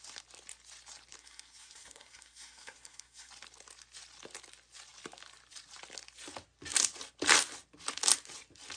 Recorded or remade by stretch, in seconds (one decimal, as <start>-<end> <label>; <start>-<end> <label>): 0.0-1.2 recorded; 1.2-3.3 remade; 3.3-8.8 recorded